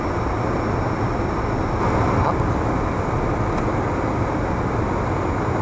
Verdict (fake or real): real